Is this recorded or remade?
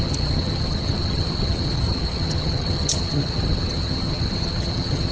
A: remade